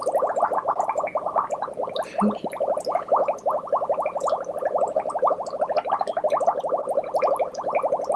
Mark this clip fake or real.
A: real